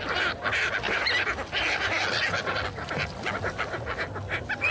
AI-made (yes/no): no